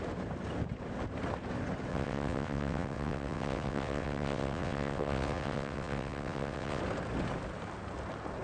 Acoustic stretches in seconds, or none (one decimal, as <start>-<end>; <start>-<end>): 0.0-1.9; 6.8-8.4